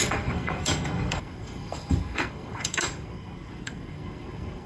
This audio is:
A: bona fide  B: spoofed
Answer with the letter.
B